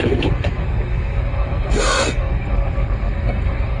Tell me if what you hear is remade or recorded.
remade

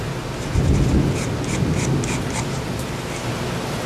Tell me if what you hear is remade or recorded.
recorded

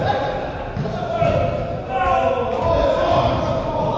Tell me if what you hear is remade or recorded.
recorded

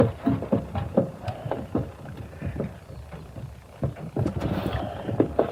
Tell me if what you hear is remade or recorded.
recorded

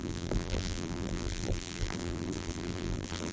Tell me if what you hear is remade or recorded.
remade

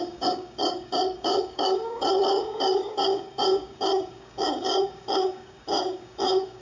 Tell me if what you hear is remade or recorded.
remade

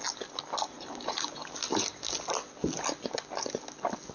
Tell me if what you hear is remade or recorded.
recorded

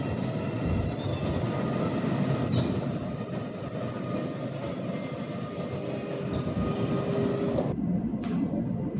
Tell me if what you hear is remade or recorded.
recorded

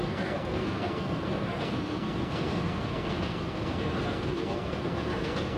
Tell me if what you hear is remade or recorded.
remade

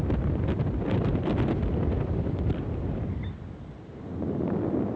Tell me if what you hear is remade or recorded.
recorded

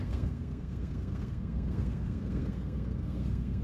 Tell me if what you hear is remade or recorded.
remade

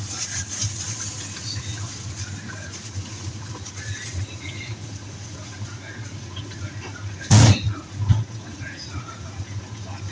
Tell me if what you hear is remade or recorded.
remade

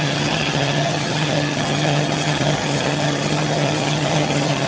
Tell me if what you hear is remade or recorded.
remade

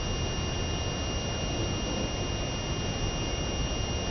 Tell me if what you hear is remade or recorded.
recorded